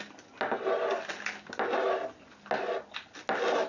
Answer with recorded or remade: recorded